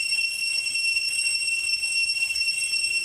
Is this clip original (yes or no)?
no